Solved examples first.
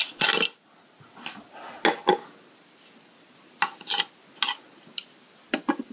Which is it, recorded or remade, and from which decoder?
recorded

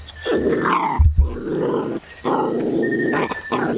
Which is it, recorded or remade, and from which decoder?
recorded